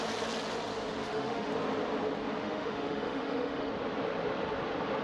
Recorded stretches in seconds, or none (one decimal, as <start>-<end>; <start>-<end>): 0.0-1.0; 1.5-2.4; 3.7-5.0